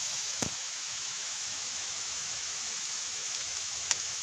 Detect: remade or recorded remade